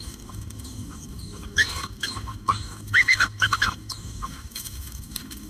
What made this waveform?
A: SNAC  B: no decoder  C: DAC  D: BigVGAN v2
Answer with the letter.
C